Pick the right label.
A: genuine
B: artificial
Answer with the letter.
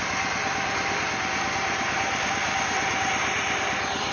A